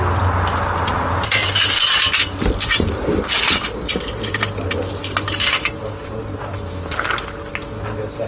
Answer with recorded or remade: recorded